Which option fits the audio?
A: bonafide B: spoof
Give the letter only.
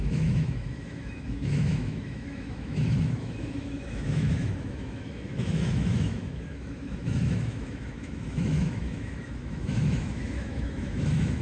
B